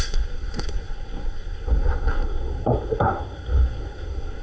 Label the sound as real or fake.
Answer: fake